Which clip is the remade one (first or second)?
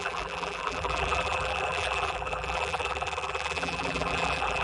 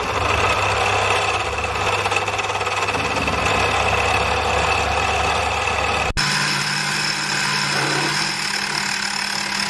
first